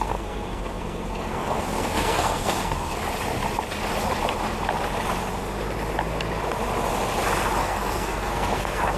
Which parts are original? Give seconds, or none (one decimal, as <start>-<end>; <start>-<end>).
3.0-7.6